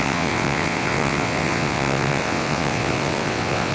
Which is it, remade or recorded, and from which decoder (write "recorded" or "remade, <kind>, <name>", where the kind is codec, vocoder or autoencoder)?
remade, vocoder, WaveNeXt